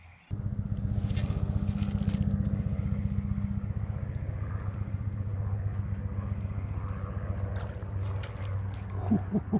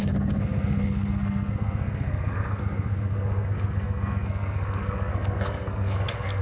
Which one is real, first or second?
first